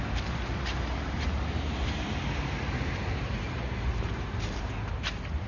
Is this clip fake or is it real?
fake